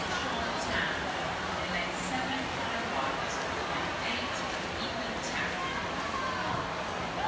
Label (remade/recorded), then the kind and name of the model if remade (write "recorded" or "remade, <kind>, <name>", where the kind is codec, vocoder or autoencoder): recorded